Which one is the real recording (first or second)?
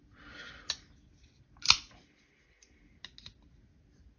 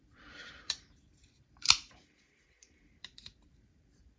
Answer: first